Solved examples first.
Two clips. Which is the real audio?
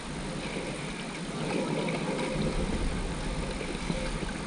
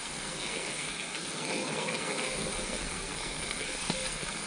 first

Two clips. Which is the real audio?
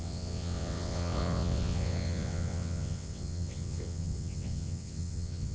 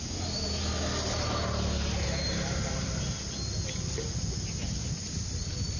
second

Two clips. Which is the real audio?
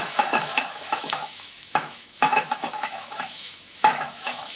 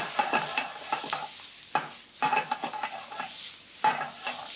second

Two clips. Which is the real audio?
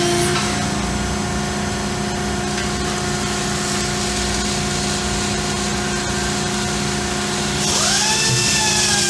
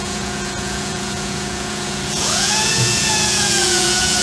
first